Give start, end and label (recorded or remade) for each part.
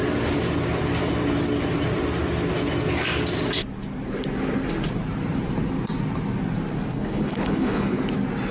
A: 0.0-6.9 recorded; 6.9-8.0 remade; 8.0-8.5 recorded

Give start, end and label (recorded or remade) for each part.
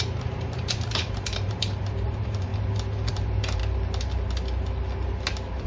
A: 0.0-2.5 remade; 2.5-3.1 recorded; 3.1-3.6 remade; 3.6-5.7 recorded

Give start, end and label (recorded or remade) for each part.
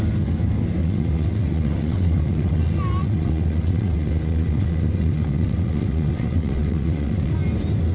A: 0.0-0.8 recorded; 0.8-2.6 remade; 2.6-3.0 recorded; 3.0-7.3 remade; 7.3-7.9 recorded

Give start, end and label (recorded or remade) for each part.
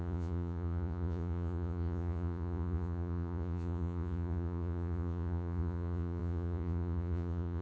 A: 0.0-7.6 remade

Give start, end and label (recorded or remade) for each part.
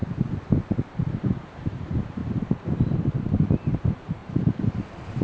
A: 0.0-1.3 recorded; 1.3-2.2 remade; 2.2-3.5 recorded; 3.5-5.2 remade